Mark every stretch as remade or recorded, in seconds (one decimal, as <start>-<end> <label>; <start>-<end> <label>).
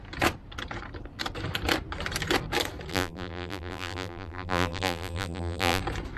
0.0-2.9 recorded; 2.9-5.8 remade; 5.8-6.2 recorded